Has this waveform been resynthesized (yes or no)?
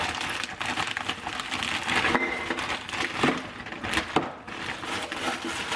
no